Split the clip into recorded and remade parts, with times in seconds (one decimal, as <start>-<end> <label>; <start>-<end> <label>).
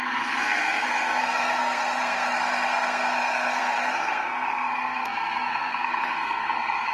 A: 0.0-6.9 remade